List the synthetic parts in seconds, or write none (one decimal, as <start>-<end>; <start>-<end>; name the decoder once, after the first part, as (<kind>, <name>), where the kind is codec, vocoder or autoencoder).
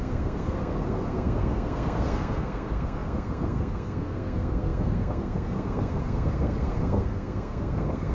0.0-8.1 (codec, SNAC)